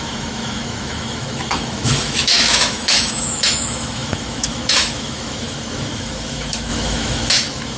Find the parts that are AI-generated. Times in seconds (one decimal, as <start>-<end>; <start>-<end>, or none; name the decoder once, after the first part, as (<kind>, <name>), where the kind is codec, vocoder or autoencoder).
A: 0.0-7.8 (autoencoder, DAC-VAE)